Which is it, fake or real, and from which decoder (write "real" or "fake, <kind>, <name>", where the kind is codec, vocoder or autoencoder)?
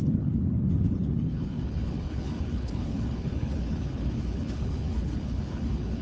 fake, codec, HILCodec